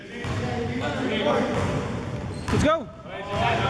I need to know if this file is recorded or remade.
recorded